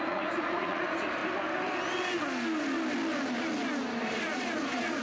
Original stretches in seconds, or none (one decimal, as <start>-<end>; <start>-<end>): 1.2-4.2